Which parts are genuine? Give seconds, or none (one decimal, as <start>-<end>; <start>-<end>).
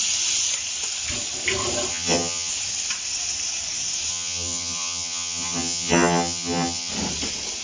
0.0-1.9; 2.5-4.1; 6.9-7.6